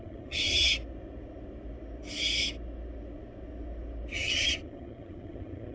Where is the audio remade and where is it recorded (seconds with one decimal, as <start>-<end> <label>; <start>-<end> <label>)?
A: 0.0-0.7 remade; 0.7-4.1 recorded; 4.1-5.7 remade